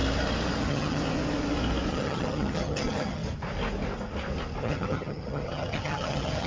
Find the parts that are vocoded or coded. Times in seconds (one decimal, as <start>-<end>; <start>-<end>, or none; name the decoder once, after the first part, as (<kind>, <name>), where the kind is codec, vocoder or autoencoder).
0.6-1.0 (vocoder, HiFi-GAN); 1.9-3.2; 4.6-6.5